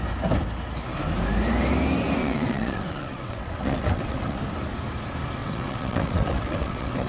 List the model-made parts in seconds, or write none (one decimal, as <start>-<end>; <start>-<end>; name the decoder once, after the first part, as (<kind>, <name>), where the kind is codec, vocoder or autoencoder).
2.2-4.4 (vocoder, WaveNeXt); 5.4-7.1